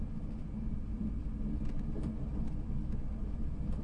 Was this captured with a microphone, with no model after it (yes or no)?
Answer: yes